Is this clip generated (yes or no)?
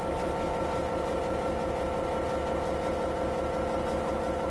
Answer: no